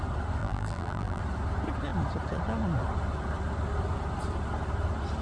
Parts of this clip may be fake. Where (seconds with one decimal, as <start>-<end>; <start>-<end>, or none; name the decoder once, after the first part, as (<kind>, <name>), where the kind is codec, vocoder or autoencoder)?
0.4-1.2 (vocoder, BigVGAN v2)